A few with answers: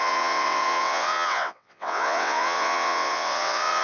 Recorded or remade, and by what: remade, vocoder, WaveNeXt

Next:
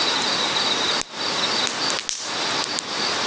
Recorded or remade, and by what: recorded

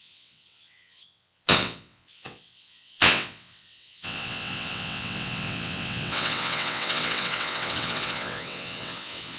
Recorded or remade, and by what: remade, vocoder, WaveNeXt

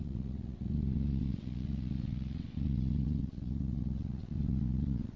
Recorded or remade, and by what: remade, vocoder, WaveNeXt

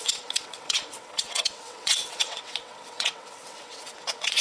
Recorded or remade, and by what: remade, vocoder, WaveNeXt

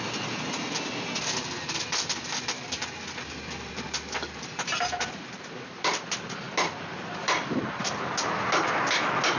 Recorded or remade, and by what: recorded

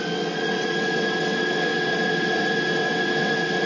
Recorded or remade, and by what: remade, vocoder, WaveNeXt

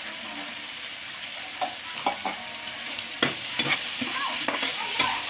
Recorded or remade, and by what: recorded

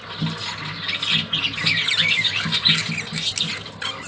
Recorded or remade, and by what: recorded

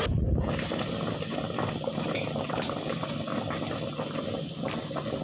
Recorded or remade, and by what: recorded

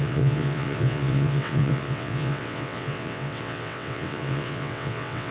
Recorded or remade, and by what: remade, vocoder, WaveNeXt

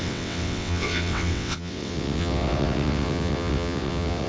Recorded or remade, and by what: remade, vocoder, WaveNeXt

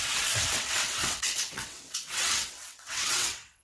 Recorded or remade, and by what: remade, vocoder, WaveNeXt